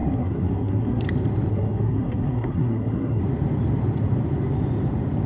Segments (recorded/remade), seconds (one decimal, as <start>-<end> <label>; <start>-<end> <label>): 0.0-1.0 remade; 1.0-1.5 recorded; 1.5-3.2 remade; 3.2-5.3 recorded